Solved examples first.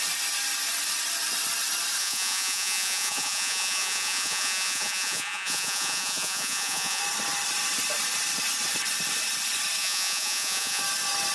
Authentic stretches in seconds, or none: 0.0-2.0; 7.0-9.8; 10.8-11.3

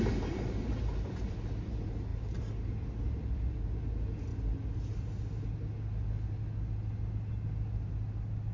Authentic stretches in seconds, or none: 0.0-8.5

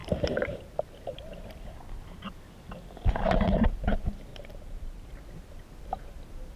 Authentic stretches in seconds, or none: 0.7-4.3; 5.1-6.6

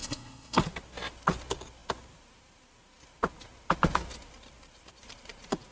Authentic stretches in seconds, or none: 0.6-5.7

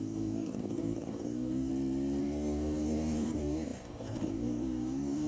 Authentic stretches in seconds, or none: 1.7-2.2

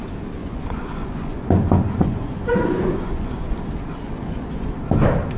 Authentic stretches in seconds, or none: 0.0-0.4; 3.6-4.0; 4.7-5.4

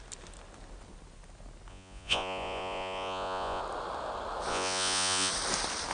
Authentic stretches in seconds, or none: 0.0-1.7; 3.6-4.5; 5.3-5.9

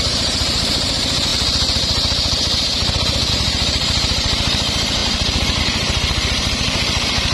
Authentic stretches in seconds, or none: 1.3-3.3; 5.0-5.6